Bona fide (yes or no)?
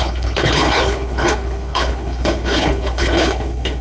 no